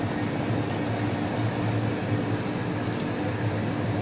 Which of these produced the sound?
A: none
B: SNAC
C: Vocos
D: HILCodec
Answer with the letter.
A